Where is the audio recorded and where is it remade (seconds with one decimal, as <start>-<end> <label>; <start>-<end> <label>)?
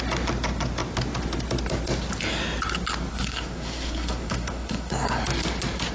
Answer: 0.0-3.1 recorded; 3.1-5.2 remade; 5.2-5.9 recorded